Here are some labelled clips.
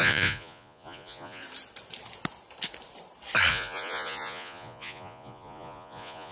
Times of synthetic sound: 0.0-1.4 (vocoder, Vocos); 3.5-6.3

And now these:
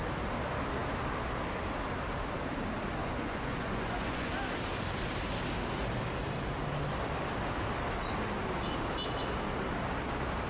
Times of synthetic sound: 3.0-4.3 (vocoder, Vocos)

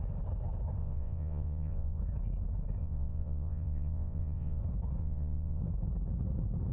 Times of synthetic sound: 0.8-2.0 (vocoder, Vocos); 2.8-4.6; 5.0-5.6

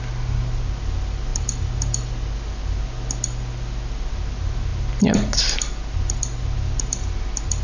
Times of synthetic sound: none

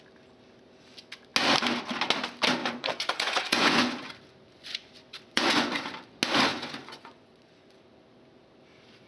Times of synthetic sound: 2.6-4.1 (vocoder, Vocos); 4.5-5.9; 6.5-7.7

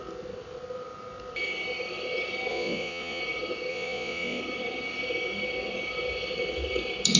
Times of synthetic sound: 2.5-3.2 (vocoder, Vocos); 3.7-4.4

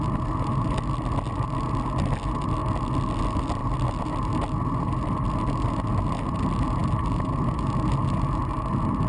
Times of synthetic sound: none